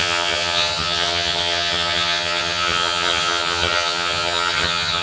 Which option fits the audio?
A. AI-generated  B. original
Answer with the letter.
A